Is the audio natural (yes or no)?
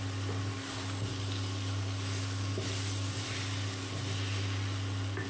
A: yes